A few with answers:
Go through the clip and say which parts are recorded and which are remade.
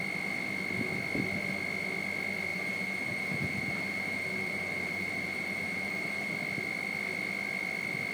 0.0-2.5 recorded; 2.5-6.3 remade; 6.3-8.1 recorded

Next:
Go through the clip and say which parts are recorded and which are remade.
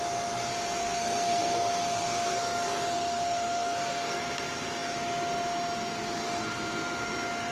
0.0-0.8 recorded; 0.8-4.2 remade; 4.2-7.5 recorded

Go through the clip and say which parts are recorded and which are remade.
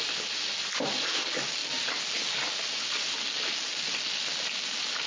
0.0-5.1 recorded